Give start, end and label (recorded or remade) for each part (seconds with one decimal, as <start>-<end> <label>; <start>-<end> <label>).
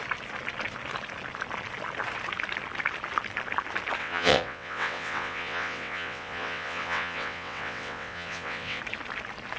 0.0-4.0 recorded; 4.0-8.8 remade; 8.8-9.6 recorded